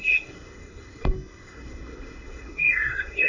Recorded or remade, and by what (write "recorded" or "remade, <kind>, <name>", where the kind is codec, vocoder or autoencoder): remade, codec, SNAC